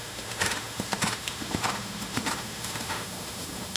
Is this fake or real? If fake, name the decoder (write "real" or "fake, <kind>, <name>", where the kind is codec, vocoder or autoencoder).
fake, autoencoder, DAC-VAE